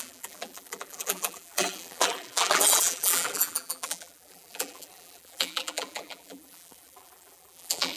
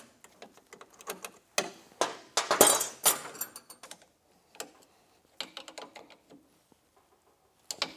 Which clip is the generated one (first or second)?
first